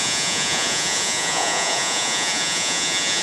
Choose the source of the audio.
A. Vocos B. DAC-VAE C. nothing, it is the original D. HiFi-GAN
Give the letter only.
A